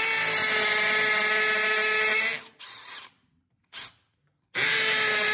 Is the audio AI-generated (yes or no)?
no